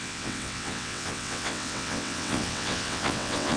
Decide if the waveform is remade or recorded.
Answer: remade